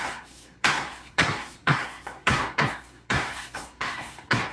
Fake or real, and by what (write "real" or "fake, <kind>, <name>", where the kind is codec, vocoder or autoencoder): fake, codec, SNAC